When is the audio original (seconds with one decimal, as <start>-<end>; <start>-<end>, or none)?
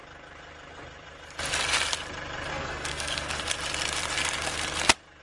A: 0.0-2.5; 3.4-5.2